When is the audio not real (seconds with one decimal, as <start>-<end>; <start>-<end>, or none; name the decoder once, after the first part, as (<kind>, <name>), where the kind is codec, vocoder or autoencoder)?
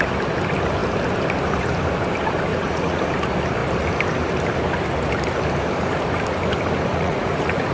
2.5-3.0 (vocoder, Vocos); 6.9-7.7